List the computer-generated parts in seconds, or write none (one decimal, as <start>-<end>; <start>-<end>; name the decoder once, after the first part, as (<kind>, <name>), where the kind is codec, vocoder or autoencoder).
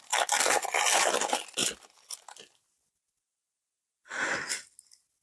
none